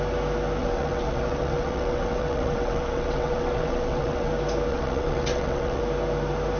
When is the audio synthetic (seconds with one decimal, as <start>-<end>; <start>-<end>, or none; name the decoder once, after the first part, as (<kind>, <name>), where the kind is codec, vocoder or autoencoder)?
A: 0.6-4.3 (vocoder, WaveNeXt); 4.7-5.8